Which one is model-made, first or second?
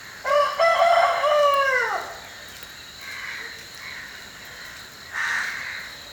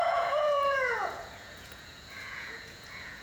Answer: second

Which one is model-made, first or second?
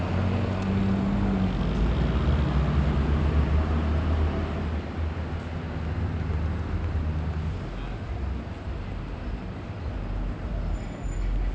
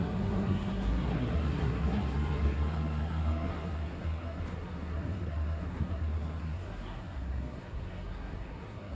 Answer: second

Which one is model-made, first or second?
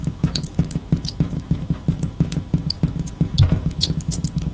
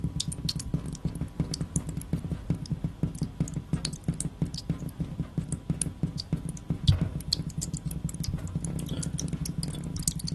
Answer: first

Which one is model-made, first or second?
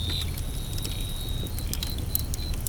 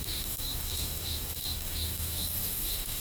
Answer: second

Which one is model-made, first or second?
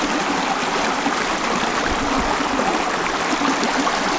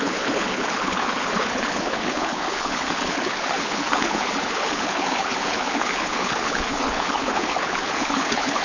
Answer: second